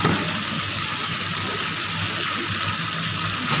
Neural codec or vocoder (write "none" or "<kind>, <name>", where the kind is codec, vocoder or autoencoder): none